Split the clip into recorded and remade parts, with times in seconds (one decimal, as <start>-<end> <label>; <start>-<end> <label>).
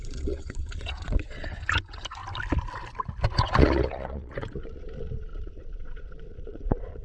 0.0-2.2 remade; 2.2-3.4 recorded; 3.4-7.0 remade